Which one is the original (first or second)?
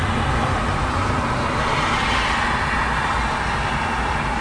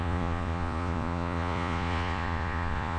first